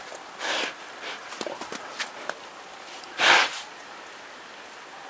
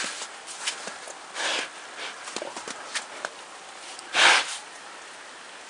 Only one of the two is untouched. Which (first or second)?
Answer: second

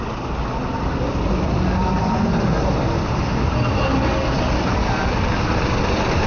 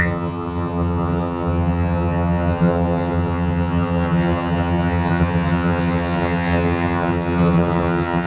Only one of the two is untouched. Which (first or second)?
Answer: first